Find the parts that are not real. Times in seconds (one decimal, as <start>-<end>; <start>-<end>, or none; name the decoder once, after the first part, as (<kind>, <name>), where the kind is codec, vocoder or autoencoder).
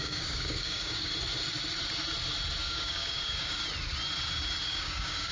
0.0-1.1 (codec, DAC); 2.6-3.6; 4.6-5.3